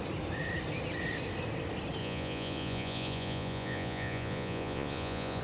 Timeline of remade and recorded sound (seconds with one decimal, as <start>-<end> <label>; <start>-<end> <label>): 0.0-2.0 recorded; 2.0-5.4 remade